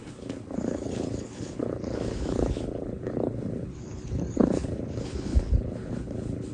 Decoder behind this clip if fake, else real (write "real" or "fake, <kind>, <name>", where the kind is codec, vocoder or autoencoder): fake, codec, HILCodec